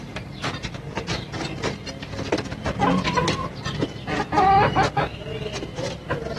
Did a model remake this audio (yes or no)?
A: yes